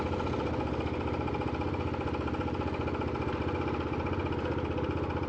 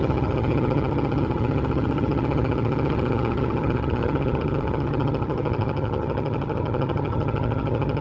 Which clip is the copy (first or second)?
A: second